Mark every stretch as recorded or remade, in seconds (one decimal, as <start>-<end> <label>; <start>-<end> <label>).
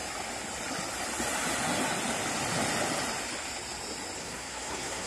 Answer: 0.0-4.2 recorded; 4.2-5.1 remade